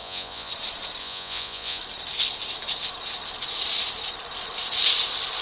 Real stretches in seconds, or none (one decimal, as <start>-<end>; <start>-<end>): 0.5-1.0; 1.8-5.4